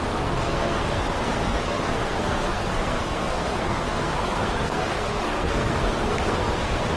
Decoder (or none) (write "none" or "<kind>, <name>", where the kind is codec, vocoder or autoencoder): codec, SNAC